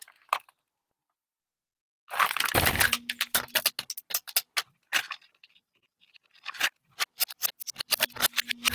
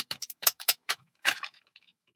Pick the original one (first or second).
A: first